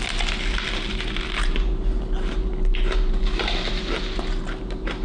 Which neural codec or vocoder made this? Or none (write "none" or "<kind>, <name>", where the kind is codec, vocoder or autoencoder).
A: none